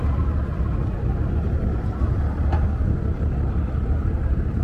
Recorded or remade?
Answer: recorded